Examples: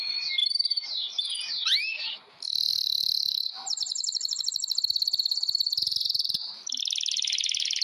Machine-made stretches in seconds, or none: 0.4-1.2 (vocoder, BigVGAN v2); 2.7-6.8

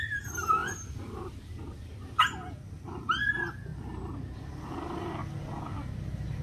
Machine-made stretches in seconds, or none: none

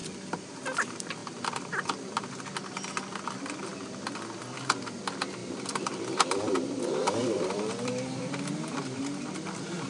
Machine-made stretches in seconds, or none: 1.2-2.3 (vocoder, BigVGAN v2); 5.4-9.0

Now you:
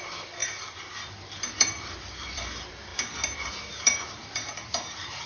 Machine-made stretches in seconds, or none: 0.0-0.4 (vocoder, BigVGAN v2); 1.1-2.9; 3.7-5.3